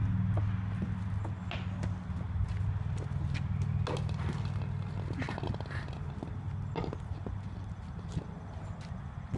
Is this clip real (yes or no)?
yes